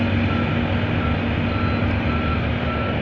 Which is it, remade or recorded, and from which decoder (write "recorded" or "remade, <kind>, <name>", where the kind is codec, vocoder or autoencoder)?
recorded